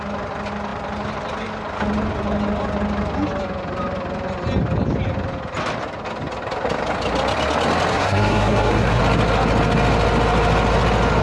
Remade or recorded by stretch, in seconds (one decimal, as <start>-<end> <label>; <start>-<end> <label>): 0.0-7.9 recorded; 7.9-9.0 remade; 9.0-11.2 recorded